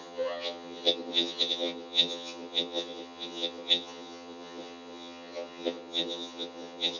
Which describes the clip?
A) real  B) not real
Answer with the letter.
B